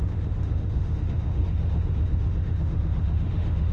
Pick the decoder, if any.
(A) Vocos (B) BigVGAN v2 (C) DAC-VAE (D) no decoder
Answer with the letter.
C